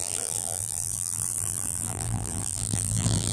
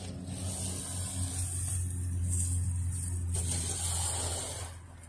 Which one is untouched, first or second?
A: second